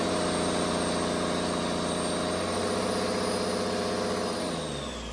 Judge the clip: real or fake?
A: real